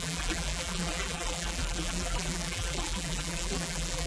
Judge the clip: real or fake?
fake